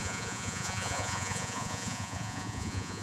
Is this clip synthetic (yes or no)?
yes